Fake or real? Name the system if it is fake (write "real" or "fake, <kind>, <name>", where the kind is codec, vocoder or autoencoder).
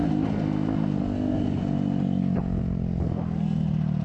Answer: real